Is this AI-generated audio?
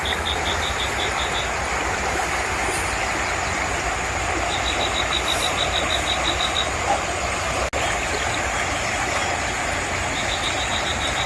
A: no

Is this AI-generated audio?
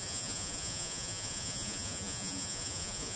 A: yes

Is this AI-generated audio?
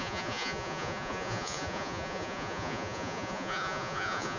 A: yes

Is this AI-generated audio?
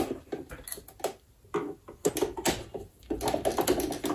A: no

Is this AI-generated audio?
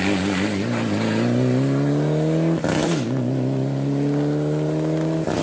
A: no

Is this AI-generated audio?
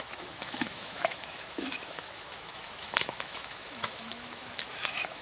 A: yes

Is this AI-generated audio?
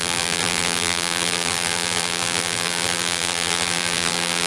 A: yes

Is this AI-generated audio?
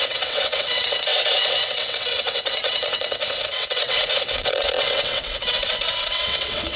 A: yes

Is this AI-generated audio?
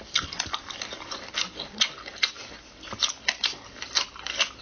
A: no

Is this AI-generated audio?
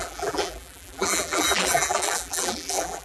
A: yes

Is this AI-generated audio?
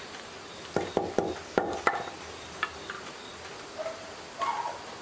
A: no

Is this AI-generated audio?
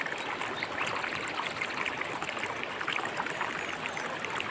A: no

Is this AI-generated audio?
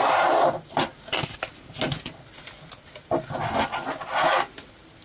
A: no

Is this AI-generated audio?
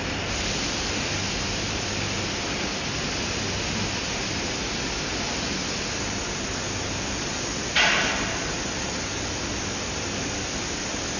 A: no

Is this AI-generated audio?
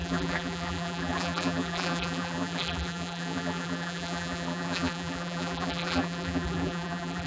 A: yes